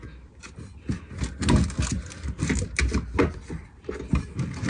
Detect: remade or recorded recorded